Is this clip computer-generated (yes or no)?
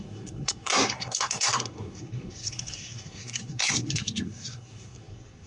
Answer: yes